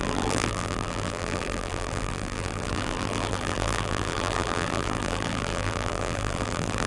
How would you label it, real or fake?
fake